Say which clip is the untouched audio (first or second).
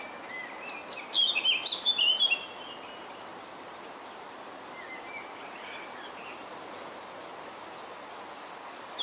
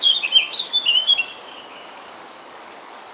first